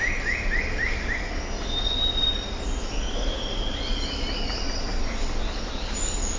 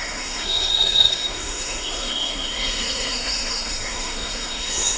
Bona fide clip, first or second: first